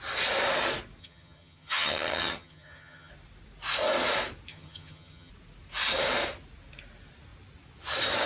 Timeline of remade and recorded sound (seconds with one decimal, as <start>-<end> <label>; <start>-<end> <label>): 0.0-1.0 recorded; 1.0-3.1 remade; 3.1-4.5 recorded; 4.5-5.3 remade; 5.3-8.3 recorded